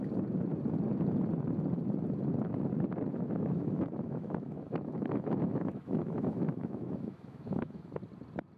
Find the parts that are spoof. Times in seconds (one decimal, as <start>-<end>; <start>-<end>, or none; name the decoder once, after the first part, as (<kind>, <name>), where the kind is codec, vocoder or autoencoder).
3.1-7.9 (autoencoder, DAC-VAE)